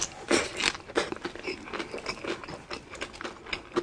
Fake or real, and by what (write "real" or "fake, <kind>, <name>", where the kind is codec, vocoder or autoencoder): real